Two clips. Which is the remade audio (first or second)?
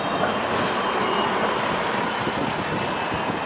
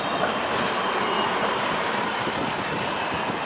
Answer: second